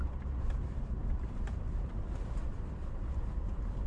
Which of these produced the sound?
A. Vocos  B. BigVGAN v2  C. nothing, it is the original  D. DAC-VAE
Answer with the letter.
B